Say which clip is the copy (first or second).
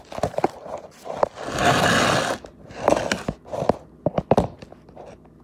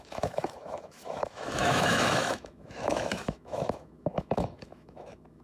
second